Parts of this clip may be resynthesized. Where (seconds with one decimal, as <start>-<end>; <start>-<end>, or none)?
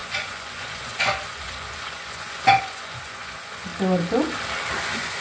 0.0-3.7; 4.8-5.2